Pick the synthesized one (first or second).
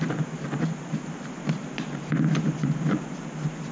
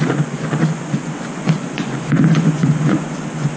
second